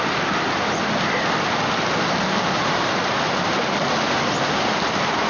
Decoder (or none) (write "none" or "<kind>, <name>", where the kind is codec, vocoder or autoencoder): none